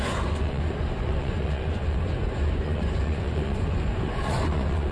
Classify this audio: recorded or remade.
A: remade